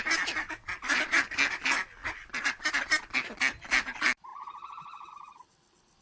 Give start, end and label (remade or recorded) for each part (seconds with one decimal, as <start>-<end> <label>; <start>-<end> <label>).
0.0-4.3 recorded; 4.3-5.1 remade; 5.1-6.0 recorded